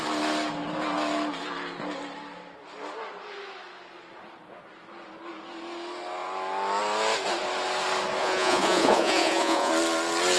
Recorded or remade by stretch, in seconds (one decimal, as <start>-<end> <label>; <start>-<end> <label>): 0.0-8.2 recorded; 8.2-9.7 remade; 9.7-10.4 recorded